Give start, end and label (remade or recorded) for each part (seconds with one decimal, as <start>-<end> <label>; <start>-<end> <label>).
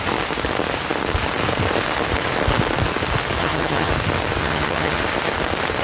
0.0-3.4 recorded; 3.4-3.9 remade; 3.9-4.4 recorded; 4.4-5.0 remade; 5.0-5.8 recorded